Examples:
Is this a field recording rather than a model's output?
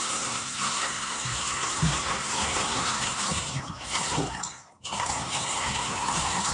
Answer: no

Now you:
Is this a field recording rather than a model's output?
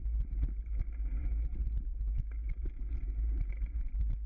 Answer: yes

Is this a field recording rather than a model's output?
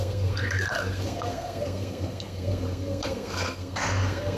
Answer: no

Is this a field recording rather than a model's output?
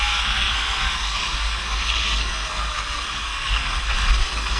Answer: no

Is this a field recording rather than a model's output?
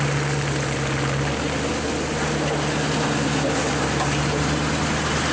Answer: yes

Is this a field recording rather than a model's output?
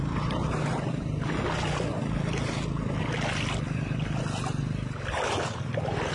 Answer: yes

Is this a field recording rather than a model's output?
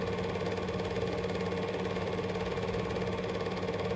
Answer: yes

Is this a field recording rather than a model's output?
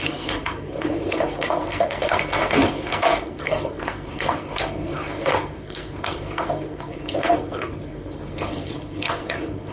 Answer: no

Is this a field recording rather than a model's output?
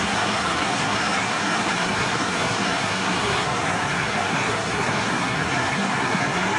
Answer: no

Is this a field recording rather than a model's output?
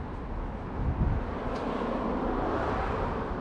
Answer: yes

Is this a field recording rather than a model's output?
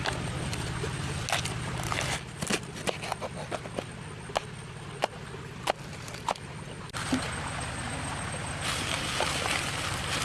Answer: yes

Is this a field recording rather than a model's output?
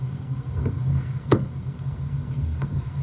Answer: no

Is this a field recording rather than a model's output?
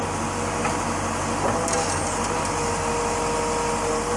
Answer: yes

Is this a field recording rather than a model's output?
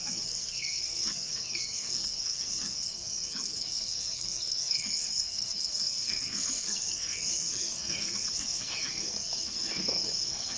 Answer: no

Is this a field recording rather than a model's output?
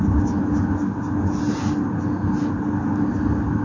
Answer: yes